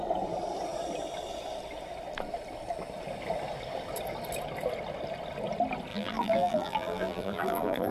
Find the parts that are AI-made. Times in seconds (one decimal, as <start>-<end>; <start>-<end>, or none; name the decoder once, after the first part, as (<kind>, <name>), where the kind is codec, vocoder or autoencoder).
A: 5.9-7.9 (vocoder, BigVGAN v2)